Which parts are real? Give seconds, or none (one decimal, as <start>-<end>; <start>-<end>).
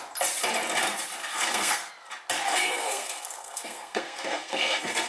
0.0-1.2; 1.9-2.5